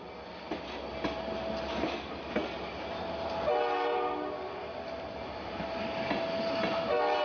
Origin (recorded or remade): recorded